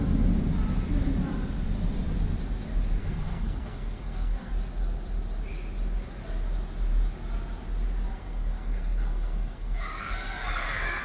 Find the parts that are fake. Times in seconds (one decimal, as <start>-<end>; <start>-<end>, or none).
3.0-4.5; 8.1-11.0

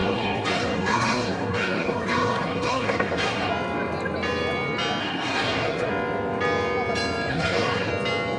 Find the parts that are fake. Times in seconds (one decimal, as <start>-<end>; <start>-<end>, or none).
0.0-3.5; 5.0-5.9; 7.3-7.9